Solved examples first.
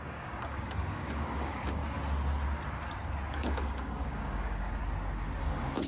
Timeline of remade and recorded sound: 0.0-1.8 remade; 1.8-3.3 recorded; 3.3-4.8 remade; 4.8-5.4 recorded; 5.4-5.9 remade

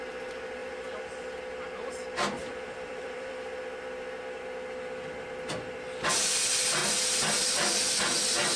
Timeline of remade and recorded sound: 0.0-0.6 recorded; 0.6-1.4 remade; 1.4-2.4 recorded; 2.4-3.6 remade; 3.6-6.8 recorded; 6.8-7.4 remade; 7.4-8.6 recorded

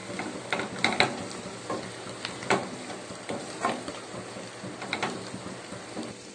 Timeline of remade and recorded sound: 0.0-6.3 recorded